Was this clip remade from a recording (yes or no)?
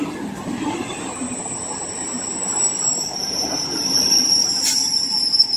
yes